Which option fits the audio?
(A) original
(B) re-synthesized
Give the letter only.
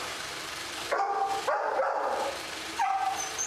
B